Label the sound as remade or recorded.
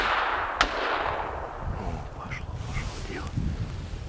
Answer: recorded